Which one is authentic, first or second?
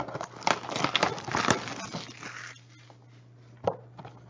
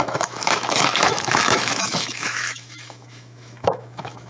first